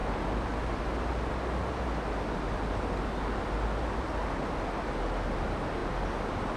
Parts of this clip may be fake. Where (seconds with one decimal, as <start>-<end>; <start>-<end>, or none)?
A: none